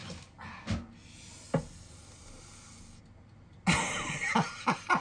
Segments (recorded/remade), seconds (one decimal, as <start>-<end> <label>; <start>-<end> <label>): 0.0-5.0 recorded